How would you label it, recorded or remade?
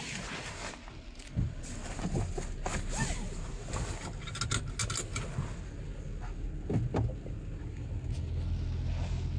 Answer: recorded